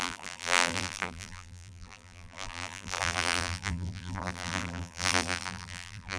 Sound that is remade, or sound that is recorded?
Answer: remade